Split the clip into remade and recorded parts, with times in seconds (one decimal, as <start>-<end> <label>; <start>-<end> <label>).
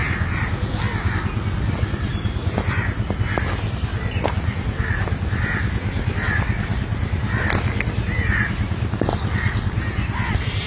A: 0.0-10.7 recorded